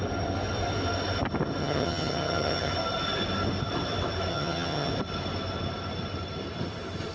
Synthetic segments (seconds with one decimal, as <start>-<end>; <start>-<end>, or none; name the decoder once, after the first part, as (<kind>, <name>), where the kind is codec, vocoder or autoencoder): 1.6-2.7 (vocoder, HiFi-GAN); 4.3-4.9